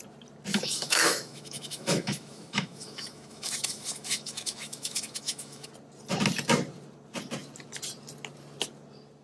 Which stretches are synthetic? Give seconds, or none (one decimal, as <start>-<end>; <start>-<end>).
0.5-5.7